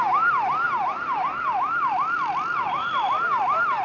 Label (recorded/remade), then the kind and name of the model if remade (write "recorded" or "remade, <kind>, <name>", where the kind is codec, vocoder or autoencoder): recorded